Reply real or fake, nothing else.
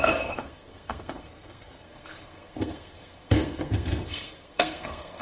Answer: fake